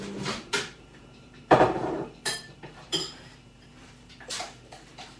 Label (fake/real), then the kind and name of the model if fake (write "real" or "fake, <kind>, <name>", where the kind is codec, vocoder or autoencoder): fake, vocoder, BigVGAN v2